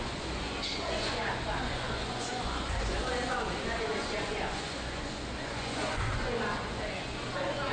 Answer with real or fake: fake